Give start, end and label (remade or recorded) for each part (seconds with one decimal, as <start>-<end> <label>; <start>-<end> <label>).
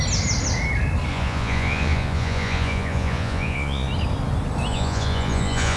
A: 0.0-1.1 recorded; 1.1-3.9 remade; 3.9-4.7 recorded; 4.7-5.8 remade